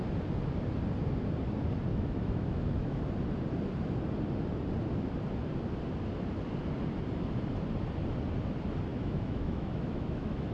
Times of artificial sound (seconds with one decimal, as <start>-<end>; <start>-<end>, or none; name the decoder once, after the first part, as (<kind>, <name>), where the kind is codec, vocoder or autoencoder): 1.9-3.0 (autoencoder, DAC-VAE); 8.9-10.5

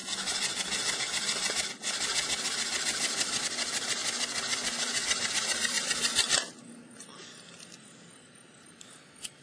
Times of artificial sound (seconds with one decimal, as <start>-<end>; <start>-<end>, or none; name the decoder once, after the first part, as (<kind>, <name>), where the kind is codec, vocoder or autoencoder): none

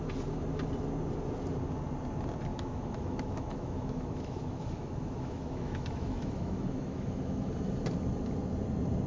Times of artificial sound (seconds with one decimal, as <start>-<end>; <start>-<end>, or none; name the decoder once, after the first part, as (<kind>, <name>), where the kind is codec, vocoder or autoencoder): 2.5-7.5 (autoencoder, DAC-VAE)